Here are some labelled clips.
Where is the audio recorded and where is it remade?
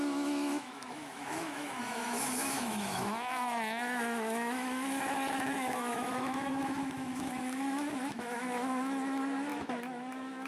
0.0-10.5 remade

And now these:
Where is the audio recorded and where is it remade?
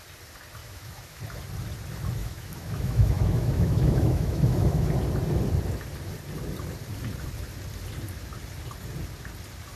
0.0-0.6 recorded; 0.6-1.2 remade; 1.2-2.2 recorded; 2.2-4.9 remade; 4.9-9.8 recorded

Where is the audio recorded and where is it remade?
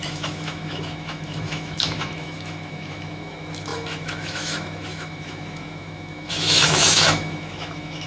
0.0-8.1 remade